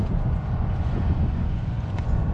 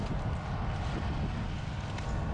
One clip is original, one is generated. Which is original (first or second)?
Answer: second